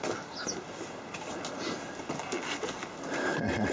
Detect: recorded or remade recorded